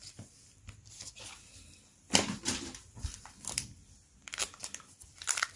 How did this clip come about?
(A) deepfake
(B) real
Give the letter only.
A